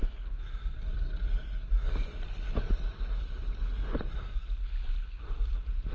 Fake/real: real